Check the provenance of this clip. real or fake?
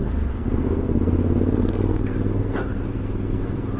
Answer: fake